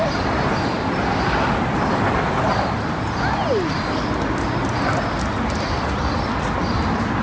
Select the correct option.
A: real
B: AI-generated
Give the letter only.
A